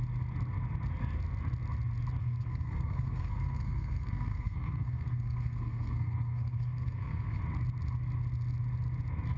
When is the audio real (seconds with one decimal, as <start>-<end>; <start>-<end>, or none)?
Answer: 0.0-2.2; 7.4-9.4